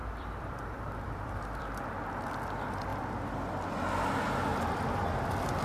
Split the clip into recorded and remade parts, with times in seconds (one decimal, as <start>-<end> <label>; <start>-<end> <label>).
0.0-1.8 remade; 1.8-2.9 recorded; 2.9-3.4 remade; 3.4-4.5 recorded; 4.5-5.0 remade; 5.0-5.6 recorded